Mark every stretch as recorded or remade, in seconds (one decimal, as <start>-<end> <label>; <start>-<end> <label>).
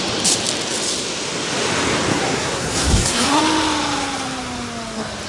0.0-2.1 recorded; 2.1-3.4 remade; 3.4-5.3 recorded